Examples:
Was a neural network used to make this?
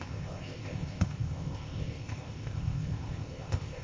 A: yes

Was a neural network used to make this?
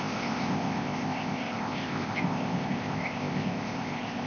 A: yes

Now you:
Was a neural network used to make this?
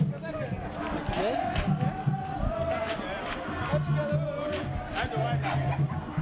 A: no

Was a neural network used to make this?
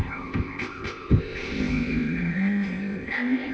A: yes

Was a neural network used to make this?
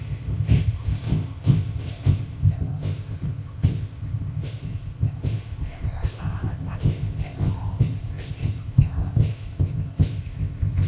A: yes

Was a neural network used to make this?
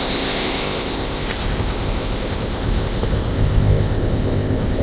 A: yes